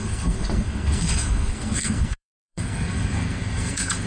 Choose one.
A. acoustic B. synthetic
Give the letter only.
B